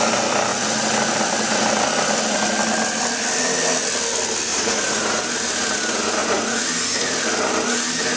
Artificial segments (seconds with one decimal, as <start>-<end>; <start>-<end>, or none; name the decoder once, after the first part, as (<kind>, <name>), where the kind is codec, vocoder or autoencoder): 4.5-5.2 (vocoder, Vocos); 6.2-6.7